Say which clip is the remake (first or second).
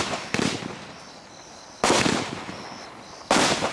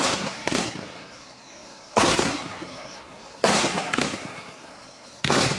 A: second